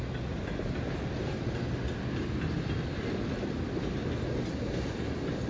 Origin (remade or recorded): recorded